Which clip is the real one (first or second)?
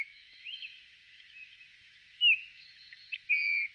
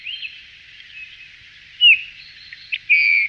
second